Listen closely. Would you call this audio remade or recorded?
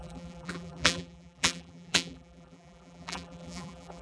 remade